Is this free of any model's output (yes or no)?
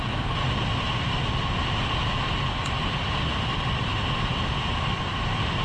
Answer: yes